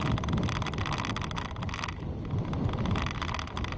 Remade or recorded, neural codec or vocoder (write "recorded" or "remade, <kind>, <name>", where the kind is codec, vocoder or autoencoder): recorded